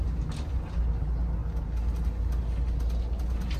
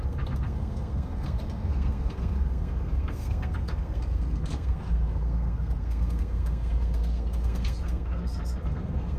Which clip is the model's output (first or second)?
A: second